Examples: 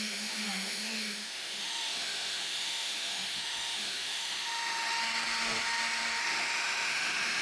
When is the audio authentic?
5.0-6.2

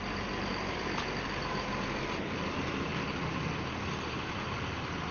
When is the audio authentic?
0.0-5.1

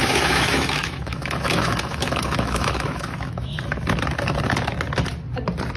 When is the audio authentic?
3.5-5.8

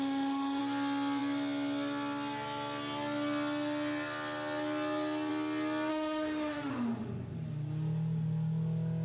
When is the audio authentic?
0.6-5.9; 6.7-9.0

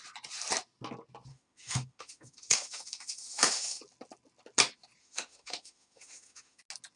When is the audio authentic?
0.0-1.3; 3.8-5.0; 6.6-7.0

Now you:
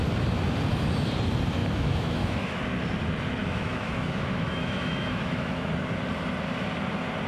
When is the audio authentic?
0.0-1.6; 2.6-3.4; 5.7-7.3

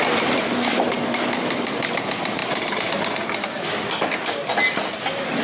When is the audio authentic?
0.0-5.4

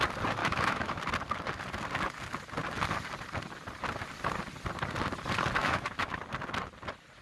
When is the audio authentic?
0.0-0.4; 1.0-5.6; 6.2-7.2